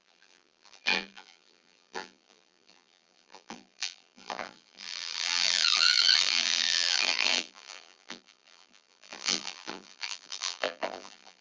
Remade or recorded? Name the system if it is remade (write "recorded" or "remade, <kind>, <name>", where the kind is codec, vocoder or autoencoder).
remade, vocoder, BigVGAN v2